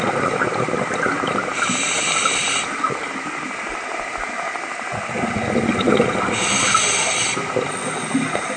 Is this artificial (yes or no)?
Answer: no